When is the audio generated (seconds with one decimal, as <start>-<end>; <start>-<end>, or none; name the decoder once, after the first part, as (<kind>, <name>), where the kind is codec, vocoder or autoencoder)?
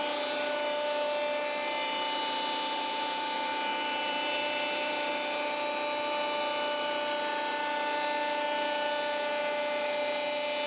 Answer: 3.7-5.1 (vocoder, BigVGAN v2)